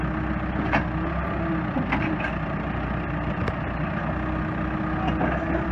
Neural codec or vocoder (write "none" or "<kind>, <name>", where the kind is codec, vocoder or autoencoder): none